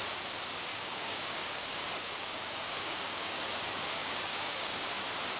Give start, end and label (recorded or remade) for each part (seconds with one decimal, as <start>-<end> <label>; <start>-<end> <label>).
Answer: 0.0-0.7 recorded; 0.7-3.4 remade; 3.4-4.0 recorded; 4.0-5.0 remade; 5.0-5.4 recorded